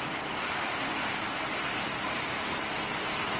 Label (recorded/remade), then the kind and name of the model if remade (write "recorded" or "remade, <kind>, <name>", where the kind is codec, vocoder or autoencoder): remade, vocoder, BigVGAN v2